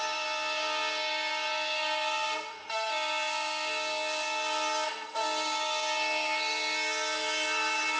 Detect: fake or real fake